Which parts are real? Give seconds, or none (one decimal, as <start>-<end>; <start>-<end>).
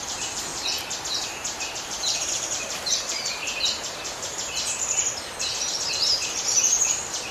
0.5-1.1; 3.4-5.4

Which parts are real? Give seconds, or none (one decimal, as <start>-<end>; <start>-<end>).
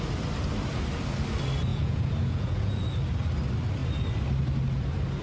0.0-1.7; 2.8-5.2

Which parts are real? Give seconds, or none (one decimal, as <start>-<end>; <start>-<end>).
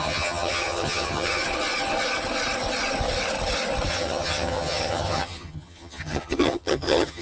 1.4-3.9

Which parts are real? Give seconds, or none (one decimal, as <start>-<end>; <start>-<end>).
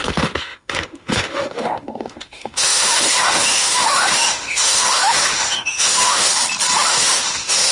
6.3-6.9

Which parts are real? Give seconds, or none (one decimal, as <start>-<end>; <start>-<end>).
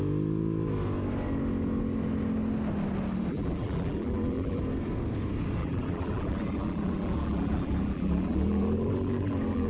0.0-3.3; 4.6-5.6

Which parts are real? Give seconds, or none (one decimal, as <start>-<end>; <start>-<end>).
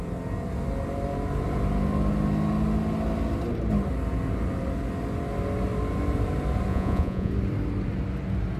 0.0-6.7; 7.3-8.6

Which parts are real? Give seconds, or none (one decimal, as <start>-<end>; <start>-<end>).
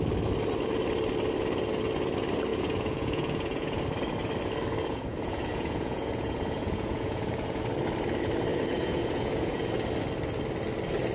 0.0-2.5; 3.8-4.8; 7.6-8.5; 9.7-11.1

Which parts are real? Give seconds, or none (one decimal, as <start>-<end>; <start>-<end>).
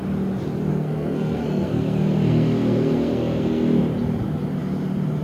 0.0-0.7; 3.8-5.2